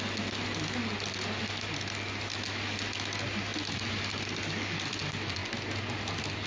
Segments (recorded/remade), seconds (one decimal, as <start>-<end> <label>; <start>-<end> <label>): 0.0-6.5 recorded

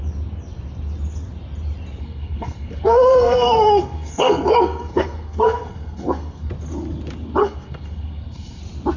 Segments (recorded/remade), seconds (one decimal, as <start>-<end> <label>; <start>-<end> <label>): 0.0-2.0 recorded; 2.0-6.5 remade; 6.5-7.4 recorded; 7.4-8.6 remade; 8.6-9.0 recorded

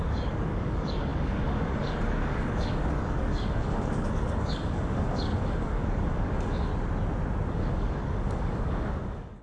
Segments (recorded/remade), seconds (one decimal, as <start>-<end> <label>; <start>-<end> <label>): 0.0-6.7 remade; 6.7-7.5 recorded; 7.5-9.4 remade

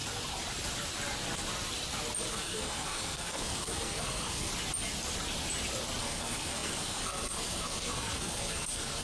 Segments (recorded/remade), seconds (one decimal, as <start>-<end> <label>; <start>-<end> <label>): 0.0-2.3 recorded; 2.3-4.5 remade; 4.5-6.0 recorded; 6.0-9.0 remade

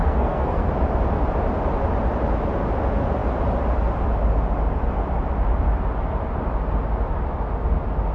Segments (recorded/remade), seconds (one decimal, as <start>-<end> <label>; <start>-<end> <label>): 0.0-0.7 remade; 0.7-8.1 recorded

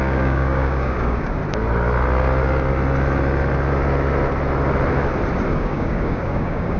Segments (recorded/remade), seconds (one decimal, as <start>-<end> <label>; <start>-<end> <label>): 0.0-1.4 remade; 1.4-5.5 recorded; 5.5-6.8 remade

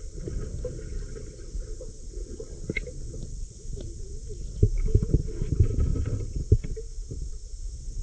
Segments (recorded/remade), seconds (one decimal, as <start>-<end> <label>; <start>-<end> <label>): 0.0-8.0 recorded

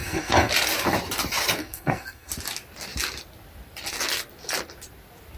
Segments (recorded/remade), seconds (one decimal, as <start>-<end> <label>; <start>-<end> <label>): 0.0-0.5 remade; 0.5-1.6 recorded; 1.6-2.3 remade; 2.3-5.4 recorded